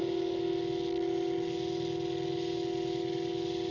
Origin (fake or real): real